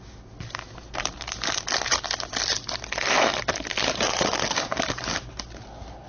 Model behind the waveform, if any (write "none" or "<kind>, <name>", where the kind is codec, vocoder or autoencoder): none